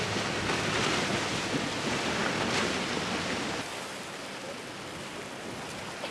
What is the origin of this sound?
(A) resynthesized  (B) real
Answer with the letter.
B